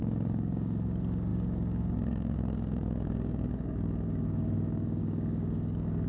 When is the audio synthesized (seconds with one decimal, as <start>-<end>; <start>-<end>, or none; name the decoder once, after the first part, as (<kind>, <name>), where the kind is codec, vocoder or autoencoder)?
0.0-6.1 (codec, DAC)